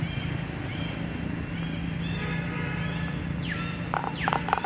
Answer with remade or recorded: recorded